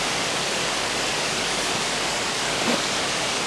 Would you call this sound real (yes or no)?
no